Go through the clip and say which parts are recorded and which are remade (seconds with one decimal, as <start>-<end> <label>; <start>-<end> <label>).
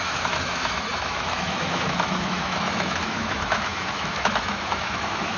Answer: 0.0-5.4 remade